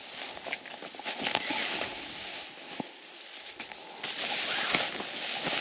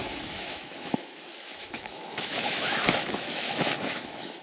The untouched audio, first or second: first